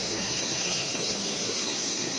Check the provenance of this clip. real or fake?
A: fake